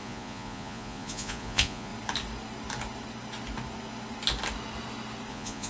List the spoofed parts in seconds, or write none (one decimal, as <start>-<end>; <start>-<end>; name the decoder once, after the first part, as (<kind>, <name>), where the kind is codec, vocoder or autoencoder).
0.0-1.9 (vocoder, Vocos); 5.3-5.7